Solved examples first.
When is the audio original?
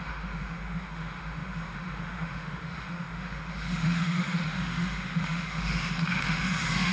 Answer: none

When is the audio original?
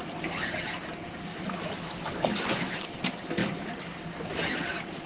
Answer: 0.0-1.3; 3.0-5.1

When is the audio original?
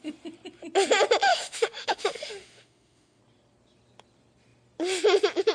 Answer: 0.0-1.3; 3.2-5.5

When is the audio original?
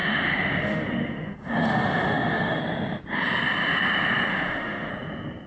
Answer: 2.6-4.3; 4.9-5.5